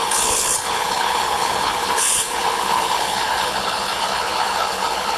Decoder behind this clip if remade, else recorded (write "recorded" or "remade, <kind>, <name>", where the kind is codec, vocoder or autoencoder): remade, codec, HILCodec